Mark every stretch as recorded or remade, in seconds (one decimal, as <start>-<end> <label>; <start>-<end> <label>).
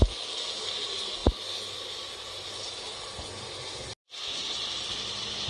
0.0-5.5 recorded